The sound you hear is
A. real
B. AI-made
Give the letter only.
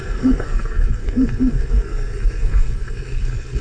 B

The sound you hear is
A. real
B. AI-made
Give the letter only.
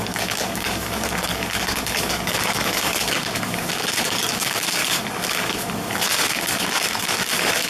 B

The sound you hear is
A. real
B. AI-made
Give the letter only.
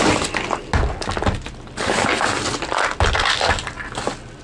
A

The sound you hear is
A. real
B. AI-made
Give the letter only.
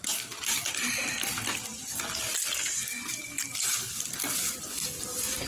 A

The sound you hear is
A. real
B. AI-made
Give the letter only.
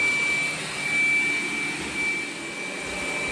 A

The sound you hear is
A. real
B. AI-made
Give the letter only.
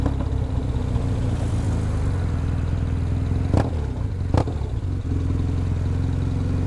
A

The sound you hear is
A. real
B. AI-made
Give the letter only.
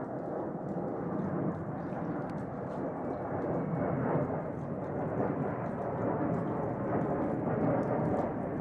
A